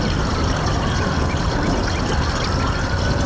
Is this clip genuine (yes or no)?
yes